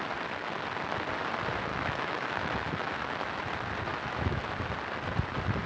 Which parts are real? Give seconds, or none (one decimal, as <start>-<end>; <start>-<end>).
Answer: 0.0-1.7; 3.5-3.9; 4.5-5.7